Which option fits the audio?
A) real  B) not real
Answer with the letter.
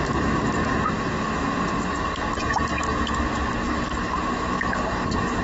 B